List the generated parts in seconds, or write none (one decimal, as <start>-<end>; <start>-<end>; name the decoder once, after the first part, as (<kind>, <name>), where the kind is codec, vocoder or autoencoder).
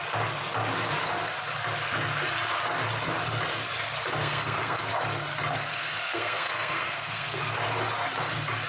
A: 4.2-4.8 (codec, SNAC); 5.7-7.4